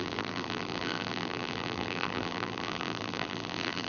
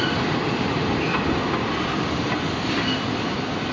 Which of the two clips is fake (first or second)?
first